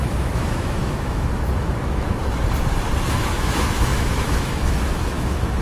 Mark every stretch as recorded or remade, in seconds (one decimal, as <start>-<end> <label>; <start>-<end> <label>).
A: 0.0-2.2 remade; 2.2-3.1 recorded; 3.1-5.6 remade